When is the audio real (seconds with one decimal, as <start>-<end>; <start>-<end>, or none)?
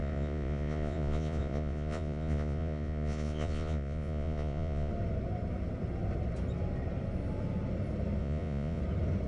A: 4.9-8.2; 8.8-9.3